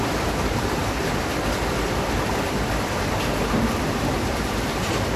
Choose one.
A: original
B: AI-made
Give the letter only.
B